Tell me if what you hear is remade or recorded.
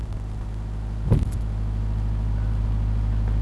recorded